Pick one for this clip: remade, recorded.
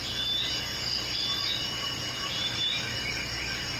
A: recorded